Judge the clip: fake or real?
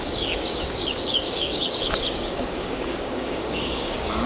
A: fake